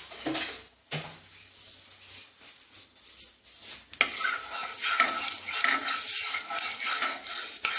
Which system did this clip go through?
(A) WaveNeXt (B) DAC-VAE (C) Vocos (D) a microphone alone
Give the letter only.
D